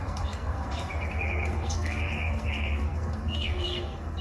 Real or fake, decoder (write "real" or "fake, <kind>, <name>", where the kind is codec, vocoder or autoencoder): fake, codec, SNAC